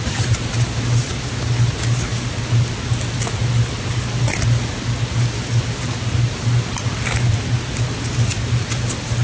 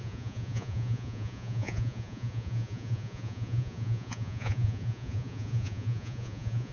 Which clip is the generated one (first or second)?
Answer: second